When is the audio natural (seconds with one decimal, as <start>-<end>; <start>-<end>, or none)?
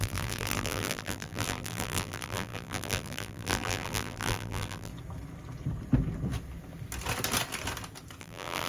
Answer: 4.9-8.2